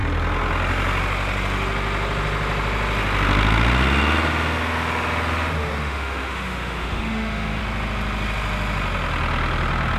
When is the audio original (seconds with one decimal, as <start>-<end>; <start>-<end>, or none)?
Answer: 0.0-5.8; 7.6-10.0